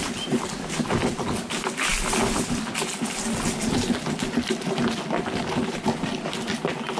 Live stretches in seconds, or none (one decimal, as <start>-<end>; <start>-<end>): 0.0-7.0